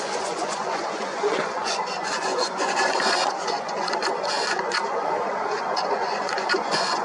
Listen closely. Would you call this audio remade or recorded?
remade